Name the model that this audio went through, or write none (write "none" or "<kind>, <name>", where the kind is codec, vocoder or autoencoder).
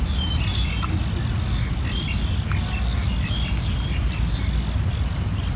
none